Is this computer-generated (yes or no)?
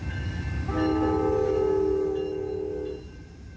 no